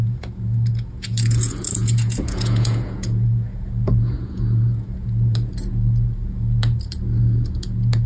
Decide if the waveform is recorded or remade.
remade